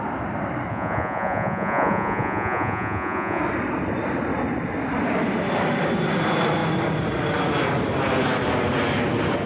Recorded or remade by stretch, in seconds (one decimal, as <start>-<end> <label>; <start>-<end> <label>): 0.0-0.7 recorded; 0.7-3.4 remade; 3.4-9.5 recorded